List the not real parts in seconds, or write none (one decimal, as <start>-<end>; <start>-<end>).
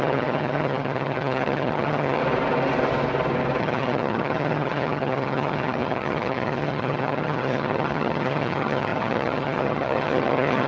0.0-2.2; 3.6-10.7